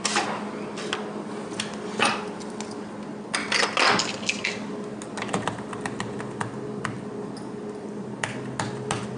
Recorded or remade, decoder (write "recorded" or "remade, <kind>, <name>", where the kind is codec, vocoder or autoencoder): recorded